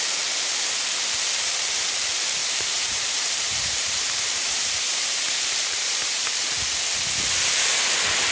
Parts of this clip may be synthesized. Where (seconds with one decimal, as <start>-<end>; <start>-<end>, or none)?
2.4-6.8